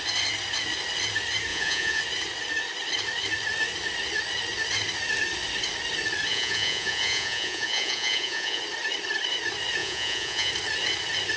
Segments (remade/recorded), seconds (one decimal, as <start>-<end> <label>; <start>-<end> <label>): 0.0-1.5 recorded; 1.5-2.0 remade; 2.0-6.3 recorded; 6.3-8.6 remade; 8.6-9.8 recorded; 9.8-10.5 remade; 10.5-11.4 recorded